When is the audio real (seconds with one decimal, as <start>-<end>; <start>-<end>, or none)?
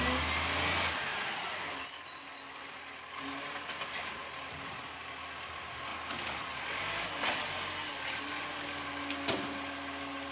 0.0-10.3